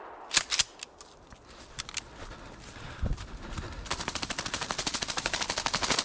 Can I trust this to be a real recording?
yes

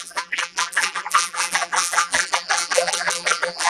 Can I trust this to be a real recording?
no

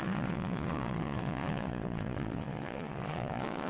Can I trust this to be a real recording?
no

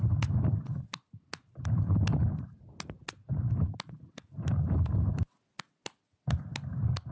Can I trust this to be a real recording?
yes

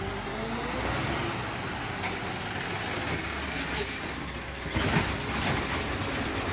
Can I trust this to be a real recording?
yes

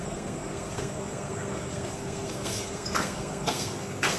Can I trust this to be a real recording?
no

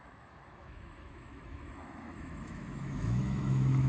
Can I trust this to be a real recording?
no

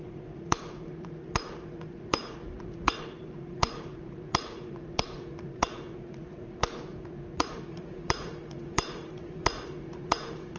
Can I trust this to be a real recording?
no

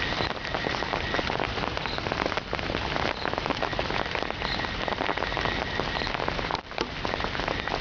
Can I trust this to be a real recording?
yes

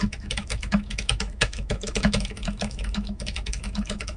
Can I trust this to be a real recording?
no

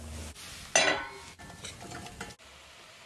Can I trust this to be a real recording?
yes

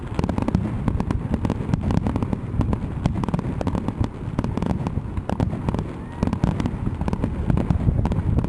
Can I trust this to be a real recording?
yes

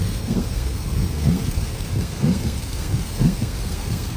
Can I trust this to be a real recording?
no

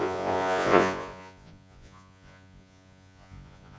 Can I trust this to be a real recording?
no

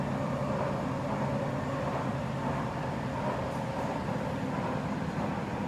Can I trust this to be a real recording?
yes